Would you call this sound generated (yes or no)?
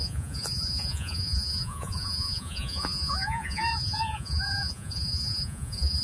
yes